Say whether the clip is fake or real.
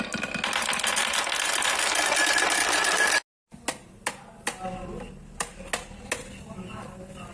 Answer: real